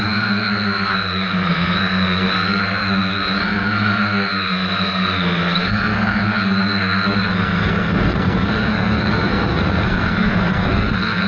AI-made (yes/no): yes